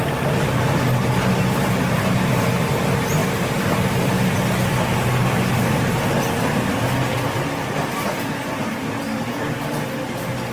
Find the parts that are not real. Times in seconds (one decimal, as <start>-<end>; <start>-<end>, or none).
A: 8.1-8.7